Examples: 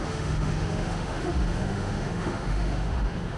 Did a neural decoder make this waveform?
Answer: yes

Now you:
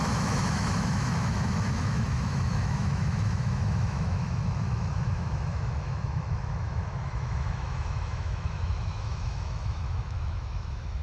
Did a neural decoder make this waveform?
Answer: yes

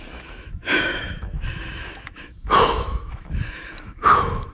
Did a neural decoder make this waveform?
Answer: yes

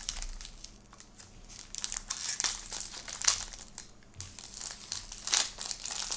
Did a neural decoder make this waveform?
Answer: no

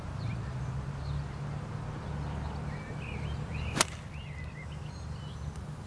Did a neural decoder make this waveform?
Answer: no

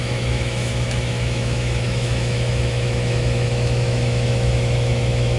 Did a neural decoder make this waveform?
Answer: yes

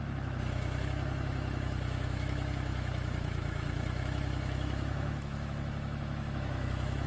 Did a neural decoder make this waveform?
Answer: yes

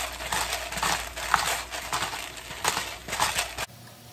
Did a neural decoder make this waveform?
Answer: no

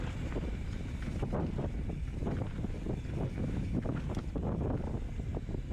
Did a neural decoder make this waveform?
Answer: no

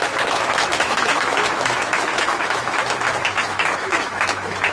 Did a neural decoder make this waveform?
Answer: yes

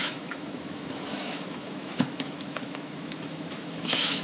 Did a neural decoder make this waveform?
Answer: yes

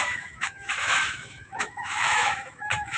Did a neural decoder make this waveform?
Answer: yes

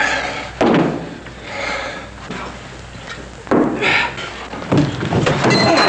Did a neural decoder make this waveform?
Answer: no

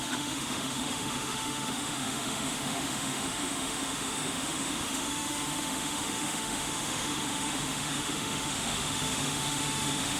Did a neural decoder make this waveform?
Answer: yes